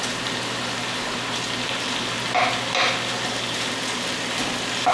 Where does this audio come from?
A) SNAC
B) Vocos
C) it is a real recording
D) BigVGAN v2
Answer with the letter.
C